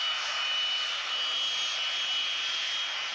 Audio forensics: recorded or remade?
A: recorded